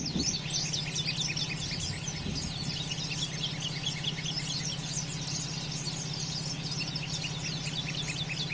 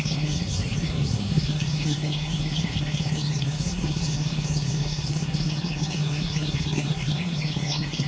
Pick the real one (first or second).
first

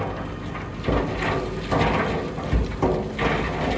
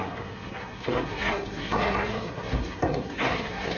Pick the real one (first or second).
first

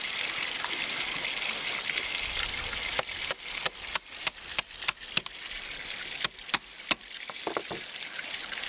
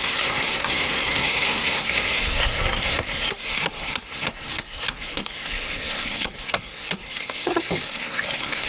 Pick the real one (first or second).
first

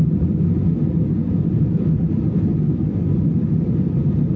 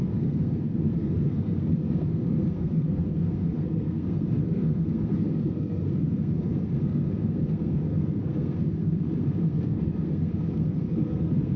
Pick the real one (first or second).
first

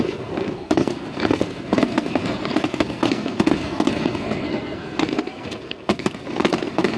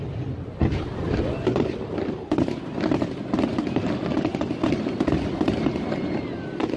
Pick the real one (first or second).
second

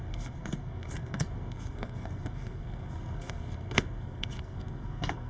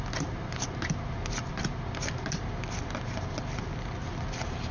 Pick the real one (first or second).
second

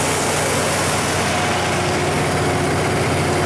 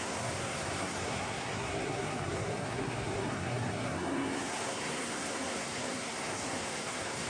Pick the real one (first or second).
first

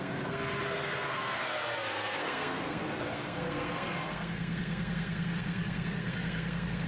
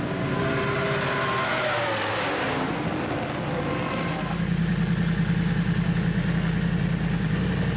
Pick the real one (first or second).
second